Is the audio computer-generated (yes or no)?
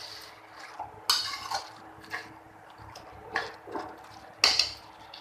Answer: no